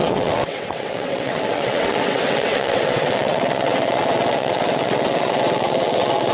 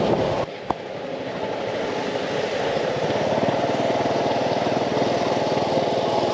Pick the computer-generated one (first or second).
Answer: first